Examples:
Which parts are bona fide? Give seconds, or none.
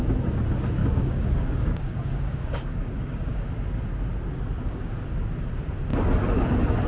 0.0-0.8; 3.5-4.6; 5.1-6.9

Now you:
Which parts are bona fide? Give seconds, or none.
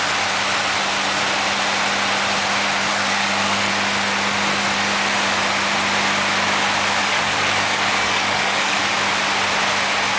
0.0-2.9; 3.7-7.0; 9.1-10.2